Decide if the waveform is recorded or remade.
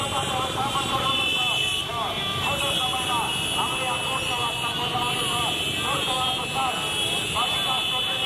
recorded